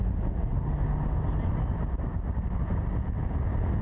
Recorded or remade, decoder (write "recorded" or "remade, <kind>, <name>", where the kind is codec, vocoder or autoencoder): recorded